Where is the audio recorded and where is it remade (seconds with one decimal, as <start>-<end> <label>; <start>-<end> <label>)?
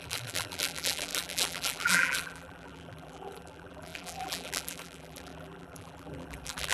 0.0-6.7 remade